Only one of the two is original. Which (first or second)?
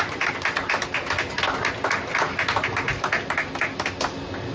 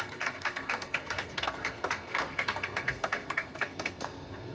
first